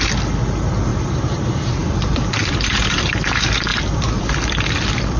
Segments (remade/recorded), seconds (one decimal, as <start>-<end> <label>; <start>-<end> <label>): 0.0-1.8 recorded; 1.8-3.1 remade; 3.1-3.7 recorded; 3.7-5.2 remade